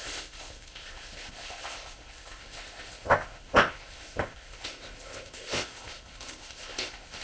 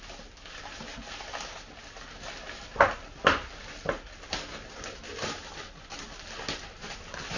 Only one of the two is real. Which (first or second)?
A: second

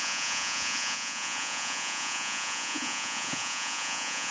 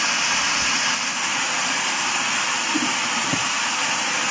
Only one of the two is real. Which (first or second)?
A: second